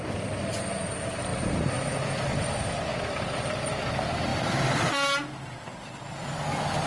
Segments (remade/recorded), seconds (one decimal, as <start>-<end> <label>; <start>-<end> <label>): 0.0-2.9 recorded; 2.9-3.8 remade; 3.8-4.3 recorded; 4.3-6.0 remade; 6.0-6.9 recorded